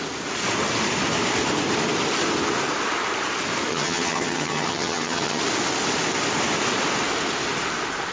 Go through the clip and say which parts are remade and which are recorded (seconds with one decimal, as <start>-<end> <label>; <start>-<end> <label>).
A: 0.0-3.7 recorded; 3.7-5.4 remade; 5.4-8.1 recorded